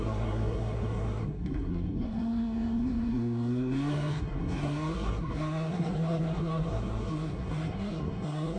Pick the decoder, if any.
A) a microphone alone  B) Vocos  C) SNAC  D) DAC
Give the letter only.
C